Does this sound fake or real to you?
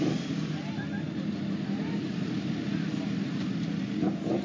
real